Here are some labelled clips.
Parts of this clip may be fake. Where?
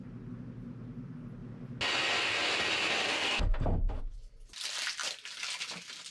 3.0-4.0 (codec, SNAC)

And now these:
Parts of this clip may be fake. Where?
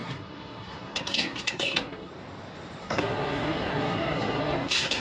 0.0-2.1 (codec, SNAC); 2.8-5.0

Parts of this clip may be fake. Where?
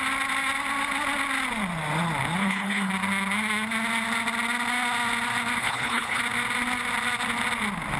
2.4-2.9 (codec, HILCodec); 5.6-6.2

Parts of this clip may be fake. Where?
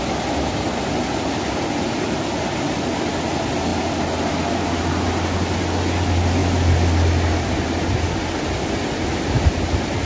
none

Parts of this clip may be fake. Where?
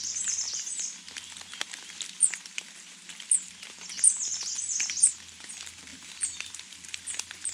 none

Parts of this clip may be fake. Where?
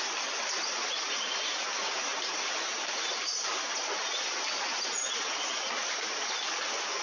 none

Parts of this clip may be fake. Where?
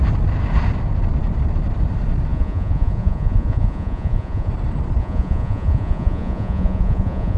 2.3-4.5 (vocoder, Vocos); 5.0-7.4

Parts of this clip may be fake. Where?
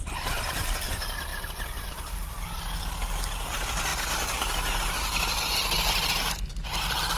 none